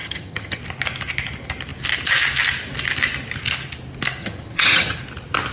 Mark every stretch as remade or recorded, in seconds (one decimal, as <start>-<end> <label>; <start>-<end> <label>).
0.0-0.6 remade; 0.6-4.2 recorded; 4.2-5.0 remade; 5.0-5.5 recorded